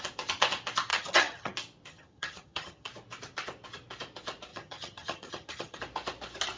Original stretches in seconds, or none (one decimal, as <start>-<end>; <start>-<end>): 0.0-0.9; 1.5-1.9; 2.9-4.5; 5.8-6.6